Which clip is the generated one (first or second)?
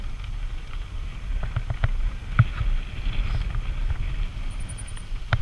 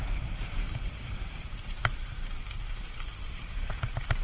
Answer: second